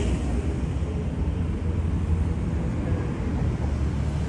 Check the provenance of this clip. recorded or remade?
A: recorded